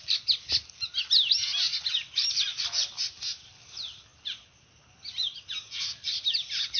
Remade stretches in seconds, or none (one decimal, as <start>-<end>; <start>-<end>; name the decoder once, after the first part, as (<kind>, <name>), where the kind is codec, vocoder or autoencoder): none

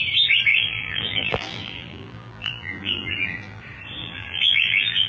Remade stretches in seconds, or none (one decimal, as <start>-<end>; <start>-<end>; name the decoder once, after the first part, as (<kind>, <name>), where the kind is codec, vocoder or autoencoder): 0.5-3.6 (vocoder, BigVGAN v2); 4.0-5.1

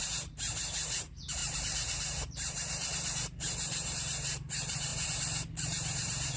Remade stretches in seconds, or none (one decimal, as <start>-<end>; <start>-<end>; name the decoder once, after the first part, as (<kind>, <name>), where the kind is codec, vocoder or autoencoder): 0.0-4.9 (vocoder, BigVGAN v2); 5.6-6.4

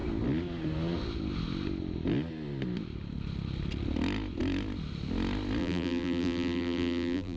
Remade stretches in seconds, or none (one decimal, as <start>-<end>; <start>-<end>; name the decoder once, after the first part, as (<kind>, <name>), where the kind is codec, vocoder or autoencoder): 5.6-7.4 (vocoder, BigVGAN v2)

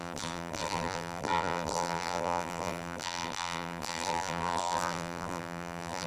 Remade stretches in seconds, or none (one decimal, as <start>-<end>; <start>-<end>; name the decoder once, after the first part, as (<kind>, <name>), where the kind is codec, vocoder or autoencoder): 0.0-6.1 (vocoder, BigVGAN v2)